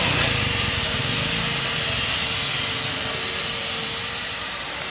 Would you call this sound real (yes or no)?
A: yes